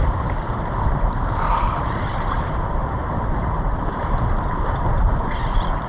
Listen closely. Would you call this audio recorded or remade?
remade